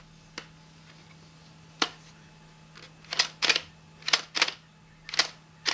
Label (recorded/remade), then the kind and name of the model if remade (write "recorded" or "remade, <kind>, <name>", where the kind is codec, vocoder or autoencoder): recorded